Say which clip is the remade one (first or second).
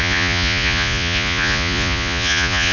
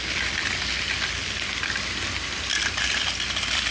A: first